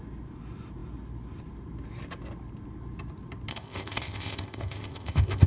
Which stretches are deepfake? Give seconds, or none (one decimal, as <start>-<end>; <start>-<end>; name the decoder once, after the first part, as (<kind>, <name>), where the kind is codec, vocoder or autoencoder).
3.5-5.5 (codec, ZipCodec)

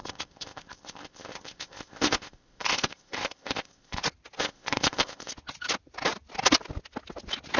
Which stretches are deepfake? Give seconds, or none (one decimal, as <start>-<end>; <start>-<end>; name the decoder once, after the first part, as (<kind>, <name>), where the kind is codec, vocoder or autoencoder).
0.0-4.0 (codec, ZipCodec); 4.4-5.3

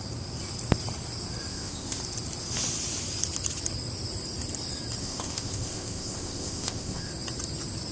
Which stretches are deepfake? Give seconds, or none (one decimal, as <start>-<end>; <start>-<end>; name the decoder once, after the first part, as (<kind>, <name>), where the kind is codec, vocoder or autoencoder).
1.5-2.0 (codec, ZipCodec); 5.0-7.1

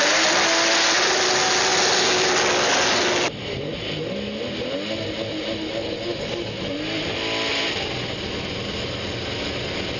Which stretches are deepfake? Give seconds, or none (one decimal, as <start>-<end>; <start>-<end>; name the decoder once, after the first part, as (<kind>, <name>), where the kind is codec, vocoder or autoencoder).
none

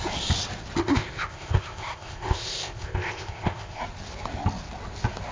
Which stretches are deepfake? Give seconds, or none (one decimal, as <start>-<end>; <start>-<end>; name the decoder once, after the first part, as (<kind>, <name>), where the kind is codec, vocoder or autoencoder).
0.8-3.8 (codec, ZipCodec)

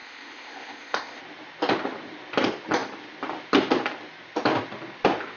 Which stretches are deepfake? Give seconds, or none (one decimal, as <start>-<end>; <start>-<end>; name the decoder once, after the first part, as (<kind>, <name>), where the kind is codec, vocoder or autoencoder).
0.0-1.2 (codec, ZipCodec)